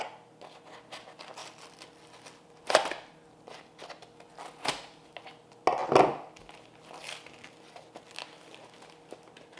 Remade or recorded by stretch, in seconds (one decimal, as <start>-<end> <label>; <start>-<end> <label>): 0.0-9.6 recorded